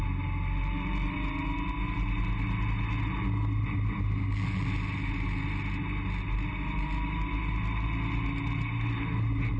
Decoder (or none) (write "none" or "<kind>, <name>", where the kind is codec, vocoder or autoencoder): none